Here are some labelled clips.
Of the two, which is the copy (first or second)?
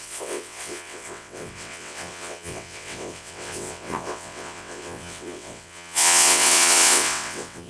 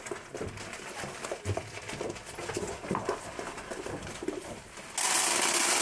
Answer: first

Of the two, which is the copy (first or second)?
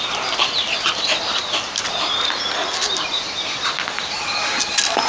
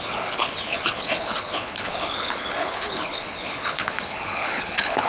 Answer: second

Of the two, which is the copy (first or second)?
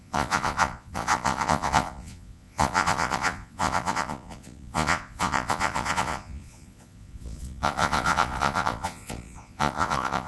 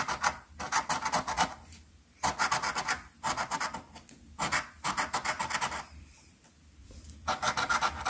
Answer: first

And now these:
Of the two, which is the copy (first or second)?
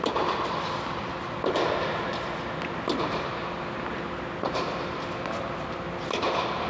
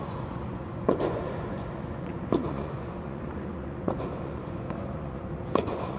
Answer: second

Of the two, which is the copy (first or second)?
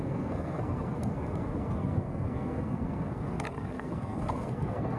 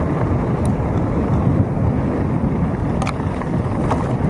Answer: first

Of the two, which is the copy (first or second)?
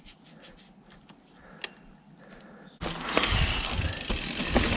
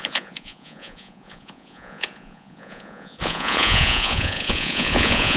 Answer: second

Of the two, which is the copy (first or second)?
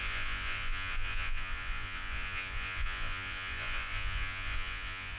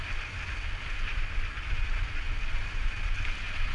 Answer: first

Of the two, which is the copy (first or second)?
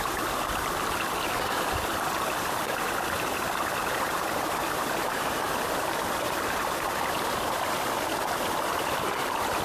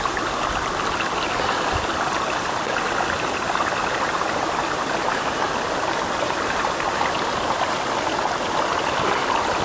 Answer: first